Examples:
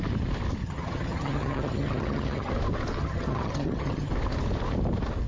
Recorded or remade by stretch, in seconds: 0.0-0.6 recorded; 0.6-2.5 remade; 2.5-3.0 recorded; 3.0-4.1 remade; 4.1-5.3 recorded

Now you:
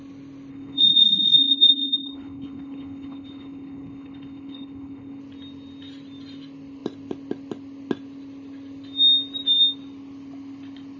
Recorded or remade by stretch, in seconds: 0.0-0.5 recorded; 0.5-5.2 remade; 5.2-11.0 recorded

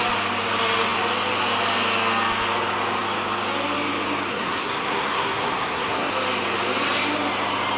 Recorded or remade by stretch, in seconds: 0.0-4.3 recorded; 4.3-6.1 remade; 6.1-7.8 recorded

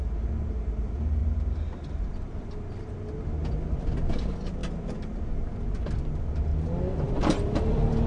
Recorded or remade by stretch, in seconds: 0.0-1.2 recorded; 1.2-2.8 remade; 2.8-6.5 recorded; 6.5-8.1 remade